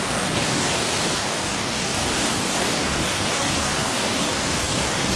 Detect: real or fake fake